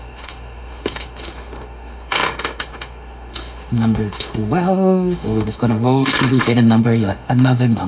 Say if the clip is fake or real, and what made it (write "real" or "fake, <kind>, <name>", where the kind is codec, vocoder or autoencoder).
fake, autoencoder, DAC-VAE